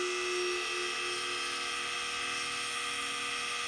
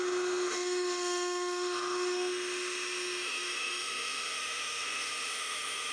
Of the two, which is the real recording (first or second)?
first